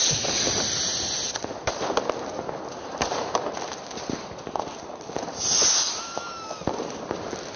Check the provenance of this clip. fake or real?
real